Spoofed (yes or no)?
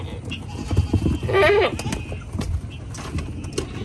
no